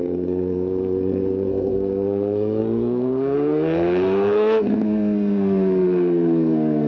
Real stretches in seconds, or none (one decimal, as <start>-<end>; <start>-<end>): none